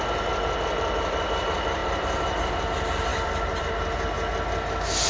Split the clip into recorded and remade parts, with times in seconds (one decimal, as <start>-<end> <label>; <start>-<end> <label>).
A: 0.0-1.8 recorded; 1.8-2.5 remade; 2.5-3.1 recorded; 3.1-3.7 remade; 3.7-5.1 recorded